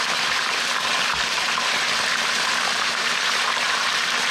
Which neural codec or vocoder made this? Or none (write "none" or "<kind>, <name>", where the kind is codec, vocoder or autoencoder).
vocoder, BigVGAN v2